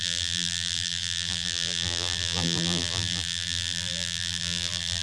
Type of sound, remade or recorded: remade